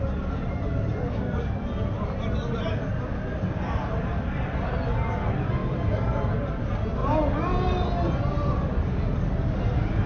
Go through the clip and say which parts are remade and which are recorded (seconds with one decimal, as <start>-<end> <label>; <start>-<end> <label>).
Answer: 0.0-10.1 recorded